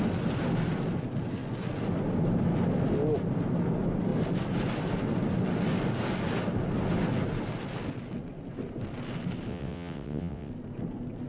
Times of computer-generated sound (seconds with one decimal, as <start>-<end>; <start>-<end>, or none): 9.5-10.5